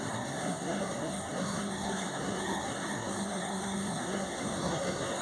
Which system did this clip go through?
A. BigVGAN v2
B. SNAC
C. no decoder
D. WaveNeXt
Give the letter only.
B